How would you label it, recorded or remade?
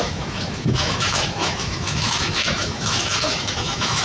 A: remade